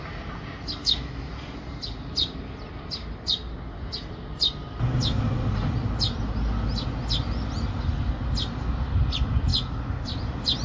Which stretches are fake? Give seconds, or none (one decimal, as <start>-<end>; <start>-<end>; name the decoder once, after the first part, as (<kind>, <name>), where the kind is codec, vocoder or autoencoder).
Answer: 0.8-1.3 (autoencoder, DAC-VAE)